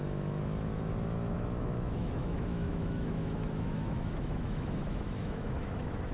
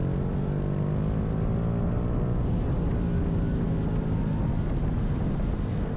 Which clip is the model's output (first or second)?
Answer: first